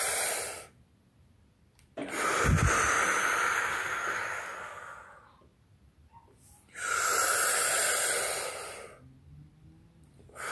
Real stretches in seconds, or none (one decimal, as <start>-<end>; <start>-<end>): 0.0-10.5